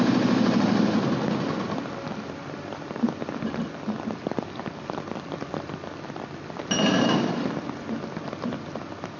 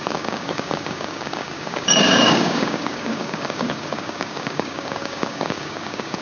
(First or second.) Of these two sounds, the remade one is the second